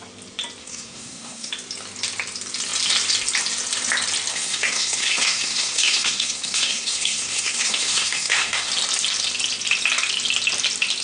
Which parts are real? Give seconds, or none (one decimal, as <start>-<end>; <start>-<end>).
0.0-0.6; 1.5-4.3; 8.7-11.0